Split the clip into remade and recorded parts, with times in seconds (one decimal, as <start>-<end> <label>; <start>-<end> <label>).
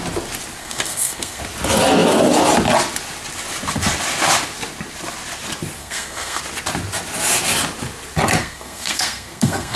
0.0-0.6 recorded; 0.6-1.4 remade; 1.4-5.8 recorded; 5.8-6.4 remade; 6.4-8.4 recorded; 8.4-9.8 remade